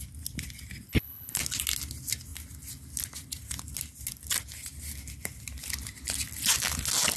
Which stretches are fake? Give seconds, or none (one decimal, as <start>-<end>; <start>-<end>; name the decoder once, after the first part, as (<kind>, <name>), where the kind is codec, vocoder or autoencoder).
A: 0.9-1.4 (codec, HILCodec)